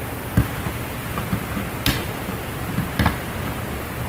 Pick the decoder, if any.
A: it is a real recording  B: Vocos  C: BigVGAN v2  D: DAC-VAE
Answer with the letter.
A